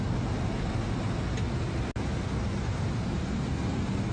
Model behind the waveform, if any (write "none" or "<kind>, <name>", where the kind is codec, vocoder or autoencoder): none